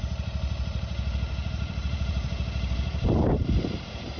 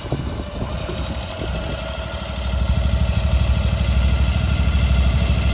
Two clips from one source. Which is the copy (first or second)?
first